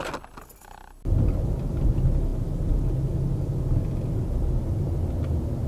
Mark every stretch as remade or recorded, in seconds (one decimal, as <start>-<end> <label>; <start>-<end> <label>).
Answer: 0.0-5.7 recorded